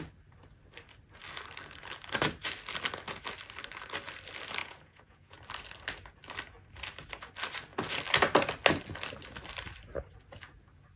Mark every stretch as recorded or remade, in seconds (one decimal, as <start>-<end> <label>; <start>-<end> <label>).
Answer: 0.0-4.6 recorded; 4.6-5.4 remade; 5.4-11.0 recorded